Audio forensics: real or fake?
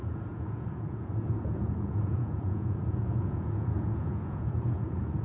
fake